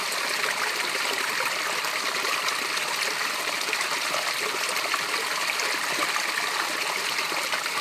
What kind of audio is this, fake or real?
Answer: real